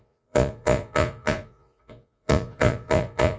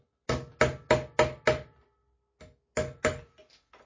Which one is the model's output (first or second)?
first